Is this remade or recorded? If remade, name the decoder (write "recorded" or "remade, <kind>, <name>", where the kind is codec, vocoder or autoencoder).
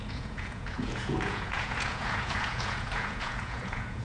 remade, vocoder, Vocos